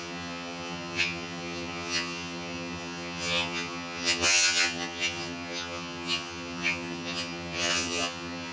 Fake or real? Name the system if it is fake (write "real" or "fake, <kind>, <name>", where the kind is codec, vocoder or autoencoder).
fake, vocoder, HiFi-GAN